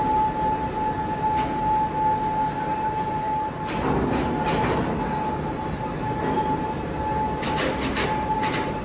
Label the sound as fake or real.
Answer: real